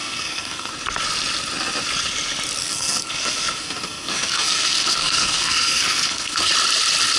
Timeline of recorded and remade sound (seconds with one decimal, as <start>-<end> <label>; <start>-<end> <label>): 0.0-0.7 remade; 0.7-2.6 recorded; 2.6-6.5 remade; 6.5-7.2 recorded